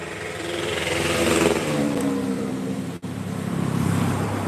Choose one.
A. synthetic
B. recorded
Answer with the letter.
A